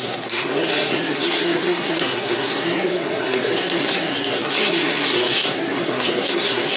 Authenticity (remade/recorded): remade